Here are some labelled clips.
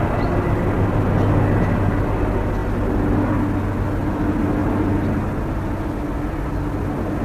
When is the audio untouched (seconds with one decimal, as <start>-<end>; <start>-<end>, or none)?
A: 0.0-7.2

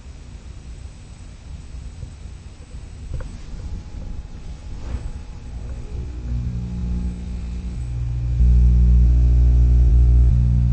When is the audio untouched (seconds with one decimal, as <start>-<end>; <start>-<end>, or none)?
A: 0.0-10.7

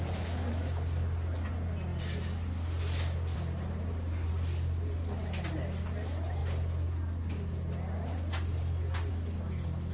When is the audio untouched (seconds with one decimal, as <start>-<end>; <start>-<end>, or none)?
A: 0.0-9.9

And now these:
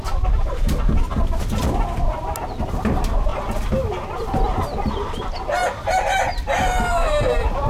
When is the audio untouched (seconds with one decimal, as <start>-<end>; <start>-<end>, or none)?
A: 0.0-7.7

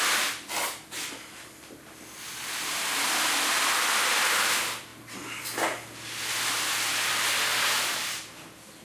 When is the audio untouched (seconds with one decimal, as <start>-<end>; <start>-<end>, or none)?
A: 0.0-8.8